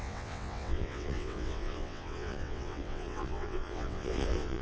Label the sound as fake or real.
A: fake